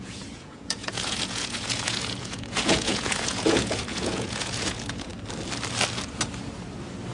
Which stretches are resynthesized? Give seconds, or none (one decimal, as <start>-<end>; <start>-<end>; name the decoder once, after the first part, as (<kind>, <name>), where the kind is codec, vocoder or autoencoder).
0.0-5.1 (vocoder, Vocos)